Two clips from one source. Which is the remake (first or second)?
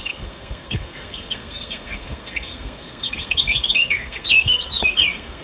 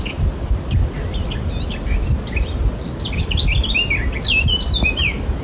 first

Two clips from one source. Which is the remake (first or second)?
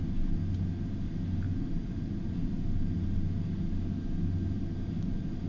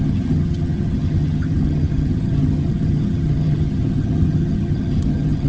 second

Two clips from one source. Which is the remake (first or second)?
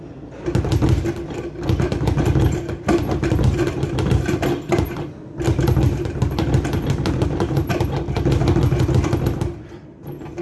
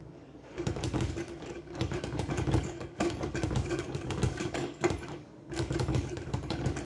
second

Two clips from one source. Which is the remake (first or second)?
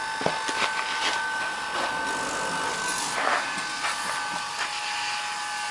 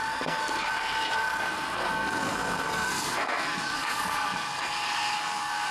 second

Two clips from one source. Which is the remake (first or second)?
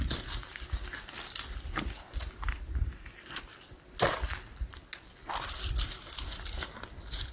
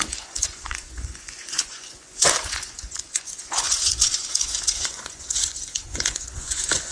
second